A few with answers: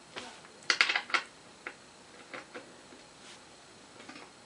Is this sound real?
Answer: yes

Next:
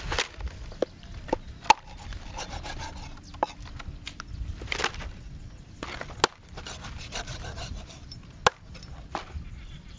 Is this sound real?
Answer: yes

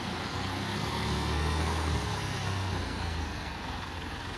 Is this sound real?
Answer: no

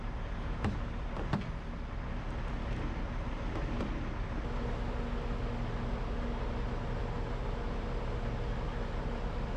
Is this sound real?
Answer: yes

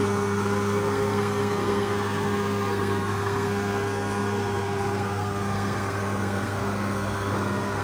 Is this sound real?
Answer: no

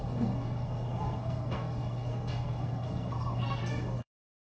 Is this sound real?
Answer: no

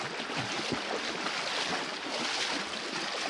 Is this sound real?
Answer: yes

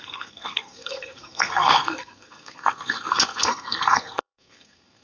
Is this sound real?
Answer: no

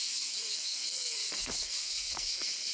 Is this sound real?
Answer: no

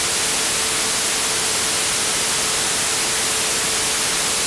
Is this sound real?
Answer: yes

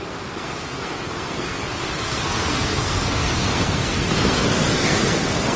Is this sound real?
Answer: no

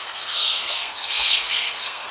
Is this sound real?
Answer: no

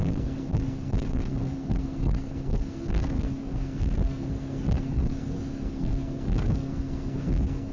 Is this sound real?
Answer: no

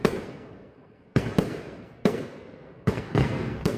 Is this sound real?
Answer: no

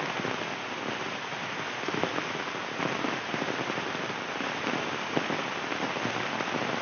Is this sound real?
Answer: yes